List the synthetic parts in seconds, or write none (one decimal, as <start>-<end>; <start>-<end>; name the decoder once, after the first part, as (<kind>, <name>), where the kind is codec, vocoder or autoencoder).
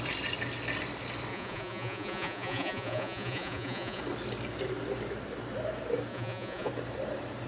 1.3-4.0 (vocoder, Vocos); 6.1-6.7